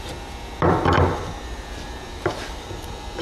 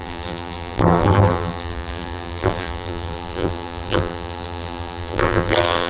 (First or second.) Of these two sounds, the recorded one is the first